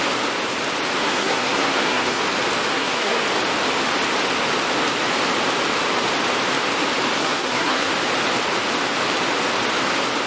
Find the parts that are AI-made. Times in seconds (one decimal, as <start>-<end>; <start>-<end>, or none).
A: 1.0-2.2; 2.7-3.2; 7.2-7.9